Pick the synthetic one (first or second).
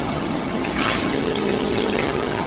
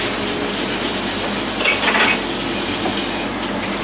first